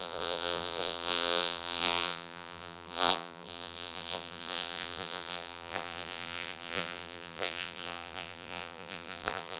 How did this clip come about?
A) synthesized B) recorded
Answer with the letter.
A